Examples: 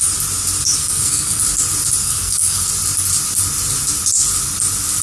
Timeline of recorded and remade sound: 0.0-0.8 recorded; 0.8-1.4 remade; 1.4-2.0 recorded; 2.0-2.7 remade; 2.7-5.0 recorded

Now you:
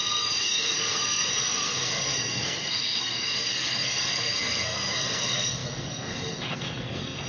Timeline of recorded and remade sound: 0.0-7.3 remade

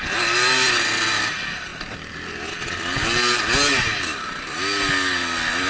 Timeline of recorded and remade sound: 0.0-5.7 recorded

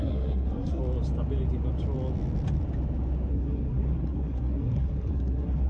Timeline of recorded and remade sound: 0.0-0.8 remade; 0.8-3.3 recorded; 3.3-5.7 remade

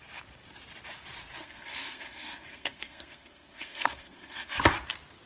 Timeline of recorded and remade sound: 0.0-1.4 recorded; 1.4-4.6 remade; 4.6-5.3 recorded